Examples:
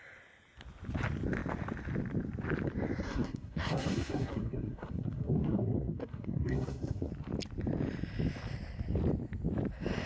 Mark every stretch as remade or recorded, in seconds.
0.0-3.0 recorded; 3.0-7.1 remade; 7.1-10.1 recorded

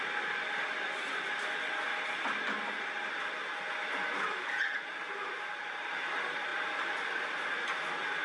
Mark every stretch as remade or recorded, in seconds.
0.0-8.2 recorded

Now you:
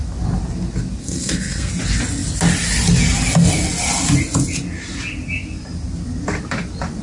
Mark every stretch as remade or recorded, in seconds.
0.0-1.0 recorded; 1.0-1.7 remade; 1.7-7.0 recorded

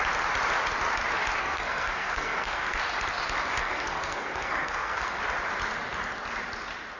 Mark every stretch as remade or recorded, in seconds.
0.0-1.4 recorded; 1.4-2.8 remade; 2.8-3.6 recorded; 3.6-5.2 remade; 5.2-7.0 recorded

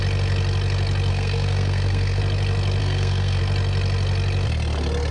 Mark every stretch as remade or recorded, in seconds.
0.0-1.1 recorded; 1.1-2.2 remade; 2.2-2.8 recorded; 2.8-3.4 remade; 3.4-5.1 recorded

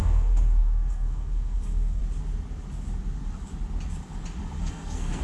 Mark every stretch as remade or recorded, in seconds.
0.0-2.0 remade; 2.0-4.6 recorded; 4.6-5.2 remade

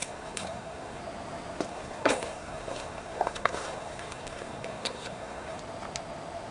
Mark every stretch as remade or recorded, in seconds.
0.0-1.0 remade; 1.0-1.7 recorded; 1.7-5.6 remade; 5.6-6.5 recorded